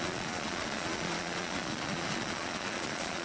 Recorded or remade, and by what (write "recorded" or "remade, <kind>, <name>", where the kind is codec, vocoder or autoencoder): remade, vocoder, Vocos